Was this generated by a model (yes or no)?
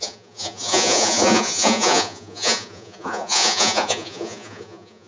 yes